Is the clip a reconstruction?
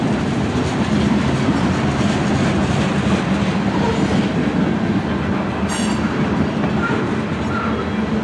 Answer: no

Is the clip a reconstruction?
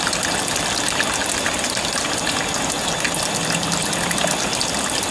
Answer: no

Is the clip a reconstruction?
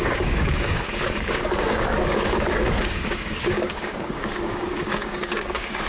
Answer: yes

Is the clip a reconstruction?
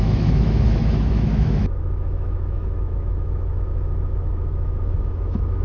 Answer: yes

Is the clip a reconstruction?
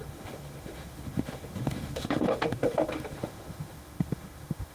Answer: yes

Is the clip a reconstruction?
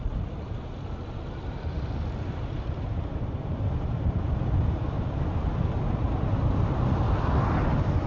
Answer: no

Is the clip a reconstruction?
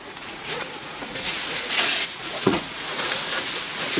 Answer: yes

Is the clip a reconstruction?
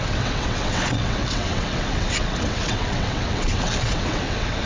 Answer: yes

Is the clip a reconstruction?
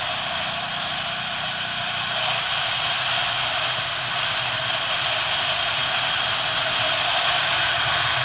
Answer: no